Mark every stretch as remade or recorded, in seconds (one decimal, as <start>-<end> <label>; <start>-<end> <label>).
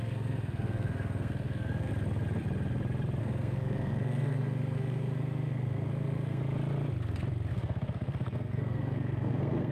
0.0-1.9 remade; 1.9-3.2 recorded; 3.2-6.4 remade; 6.4-7.5 recorded; 7.5-9.7 remade